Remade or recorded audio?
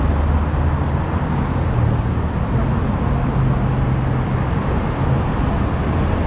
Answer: recorded